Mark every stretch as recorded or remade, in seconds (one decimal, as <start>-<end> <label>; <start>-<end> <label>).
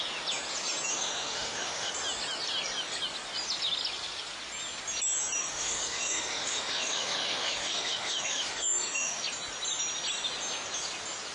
0.0-0.9 recorded; 0.9-1.9 remade; 1.9-5.4 recorded; 5.4-9.2 remade; 9.2-11.3 recorded